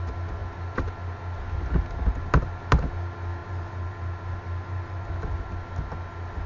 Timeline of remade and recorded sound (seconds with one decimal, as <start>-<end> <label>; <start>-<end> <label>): 0.0-3.4 recorded; 3.4-5.1 remade; 5.1-6.5 recorded